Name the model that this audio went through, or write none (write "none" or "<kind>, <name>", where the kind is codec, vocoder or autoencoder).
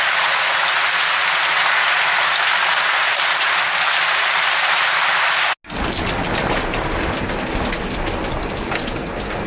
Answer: none